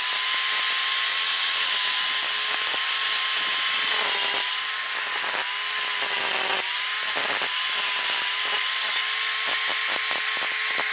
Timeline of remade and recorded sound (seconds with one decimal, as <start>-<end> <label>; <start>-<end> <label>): 0.0-1.1 recorded; 1.1-1.7 remade; 1.7-10.9 recorded